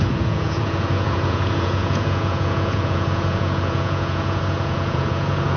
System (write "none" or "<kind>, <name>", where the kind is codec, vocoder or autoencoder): vocoder, Vocos